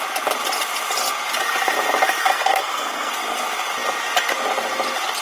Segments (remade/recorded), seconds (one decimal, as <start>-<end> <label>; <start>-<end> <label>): 0.0-2.2 recorded; 2.2-3.1 remade; 3.1-5.2 recorded